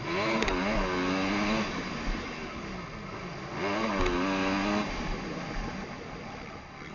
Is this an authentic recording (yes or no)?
yes